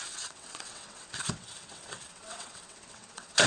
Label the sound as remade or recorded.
remade